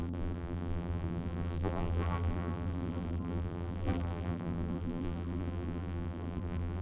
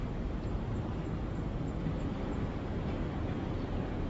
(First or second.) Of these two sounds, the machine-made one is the first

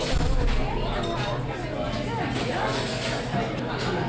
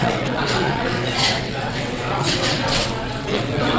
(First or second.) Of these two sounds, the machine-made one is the second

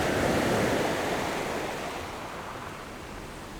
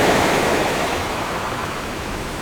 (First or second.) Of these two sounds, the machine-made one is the second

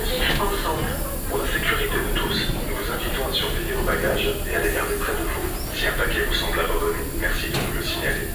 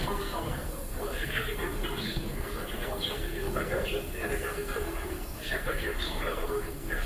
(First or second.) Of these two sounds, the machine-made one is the second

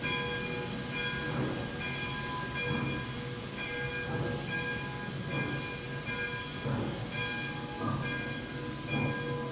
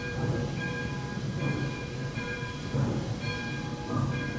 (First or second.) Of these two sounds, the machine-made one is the second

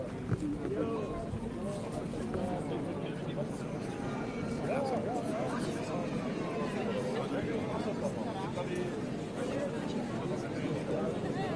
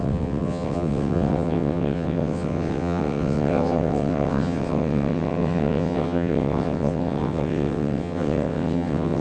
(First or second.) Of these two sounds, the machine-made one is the second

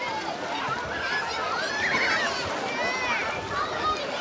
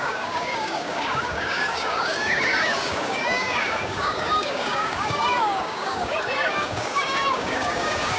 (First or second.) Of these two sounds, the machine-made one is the second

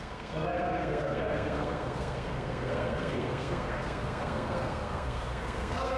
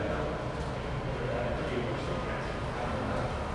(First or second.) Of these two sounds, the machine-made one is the first